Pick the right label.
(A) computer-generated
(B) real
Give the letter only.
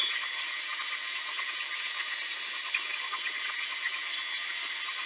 B